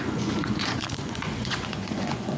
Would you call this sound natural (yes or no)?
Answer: no